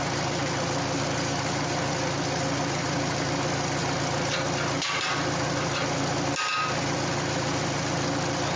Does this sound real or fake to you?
real